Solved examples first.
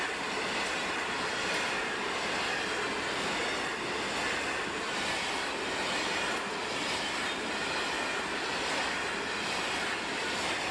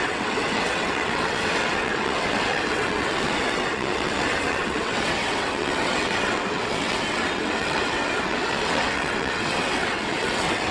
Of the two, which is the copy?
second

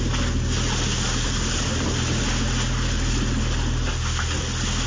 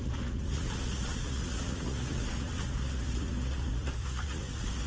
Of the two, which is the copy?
second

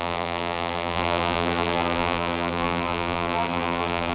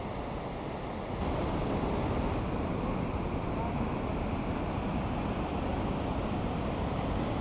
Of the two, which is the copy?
first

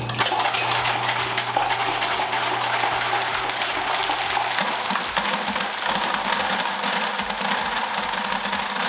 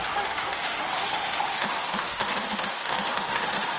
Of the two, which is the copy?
second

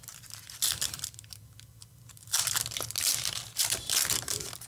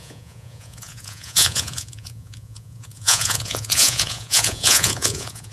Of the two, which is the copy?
second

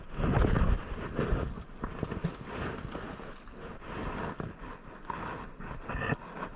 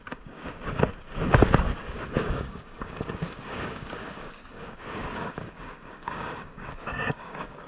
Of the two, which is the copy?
second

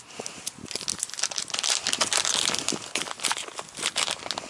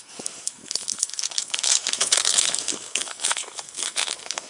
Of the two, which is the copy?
second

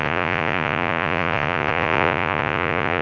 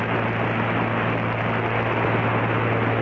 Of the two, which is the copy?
first